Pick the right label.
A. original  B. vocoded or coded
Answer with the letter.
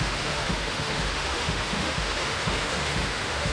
B